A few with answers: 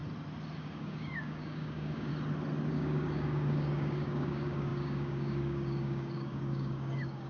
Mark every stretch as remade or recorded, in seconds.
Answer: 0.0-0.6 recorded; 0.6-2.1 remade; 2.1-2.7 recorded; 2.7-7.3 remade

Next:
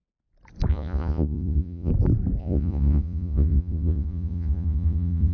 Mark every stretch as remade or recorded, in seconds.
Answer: 0.0-0.7 recorded; 0.7-1.9 remade; 1.9-2.4 recorded; 2.4-5.3 remade

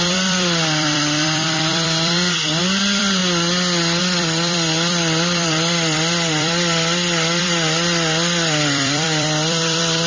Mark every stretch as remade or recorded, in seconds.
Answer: 0.0-3.2 remade; 3.2-4.0 recorded; 4.0-10.1 remade

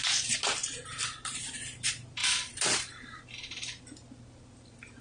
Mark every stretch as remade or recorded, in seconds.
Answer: 0.0-0.6 recorded; 0.6-1.4 remade; 1.4-2.2 recorded; 2.2-3.2 remade; 3.2-5.0 recorded